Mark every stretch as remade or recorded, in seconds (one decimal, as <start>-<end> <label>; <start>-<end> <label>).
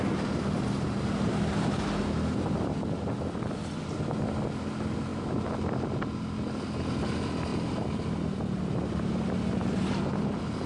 0.0-10.7 recorded